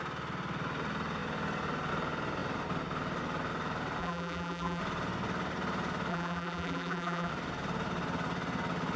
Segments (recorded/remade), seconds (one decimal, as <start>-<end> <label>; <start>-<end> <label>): 0.0-4.0 recorded; 4.0-4.8 remade; 4.8-6.1 recorded; 6.1-7.3 remade; 7.3-9.0 recorded